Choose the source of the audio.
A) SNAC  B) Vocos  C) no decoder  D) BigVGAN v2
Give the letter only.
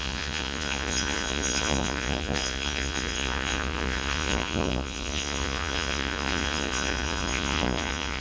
B